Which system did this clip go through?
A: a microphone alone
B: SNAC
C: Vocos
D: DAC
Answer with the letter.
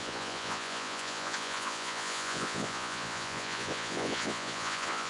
C